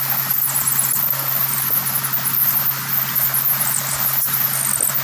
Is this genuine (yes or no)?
yes